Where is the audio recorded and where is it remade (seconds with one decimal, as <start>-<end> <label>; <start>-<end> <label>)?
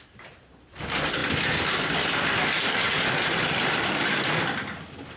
0.0-5.2 recorded